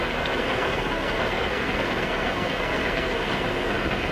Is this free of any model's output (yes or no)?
no